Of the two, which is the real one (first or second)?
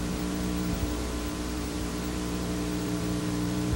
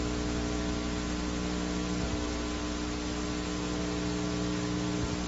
second